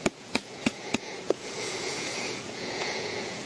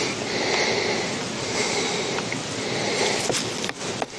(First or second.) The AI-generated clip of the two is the first